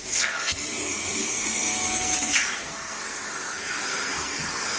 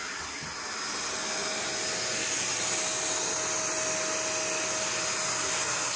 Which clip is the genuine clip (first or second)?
second